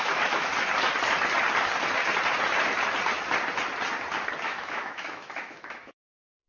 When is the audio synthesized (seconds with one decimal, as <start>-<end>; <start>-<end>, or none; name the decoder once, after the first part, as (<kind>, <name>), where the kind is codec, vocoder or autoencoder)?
0.0-0.5 (autoencoder, DAC-VAE); 4.4-6.5